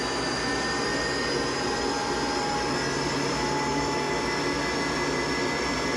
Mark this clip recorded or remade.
recorded